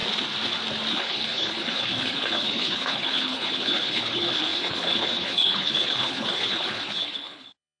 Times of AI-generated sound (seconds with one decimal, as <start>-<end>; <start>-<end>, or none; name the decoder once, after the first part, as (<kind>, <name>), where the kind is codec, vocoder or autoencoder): 0.9-7.8 (codec, HILCodec)